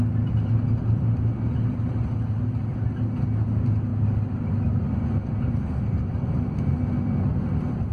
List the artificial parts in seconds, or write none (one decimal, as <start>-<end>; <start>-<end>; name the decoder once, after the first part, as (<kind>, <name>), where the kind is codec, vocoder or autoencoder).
3.9-7.4 (vocoder, BigVGAN v2)